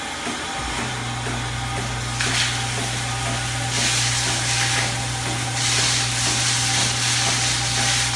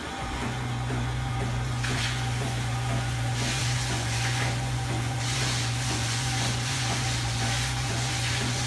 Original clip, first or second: first